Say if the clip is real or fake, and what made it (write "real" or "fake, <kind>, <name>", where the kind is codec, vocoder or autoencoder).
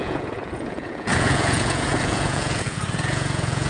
fake, vocoder, Vocos